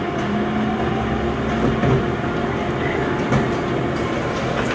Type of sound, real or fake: real